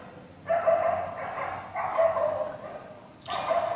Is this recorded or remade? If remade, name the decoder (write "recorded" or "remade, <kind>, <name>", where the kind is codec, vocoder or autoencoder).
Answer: recorded